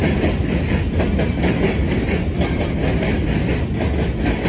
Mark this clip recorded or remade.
recorded